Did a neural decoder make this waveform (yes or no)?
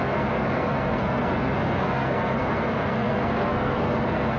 yes